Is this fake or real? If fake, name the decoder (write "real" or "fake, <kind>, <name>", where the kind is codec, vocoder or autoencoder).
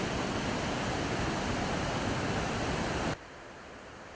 real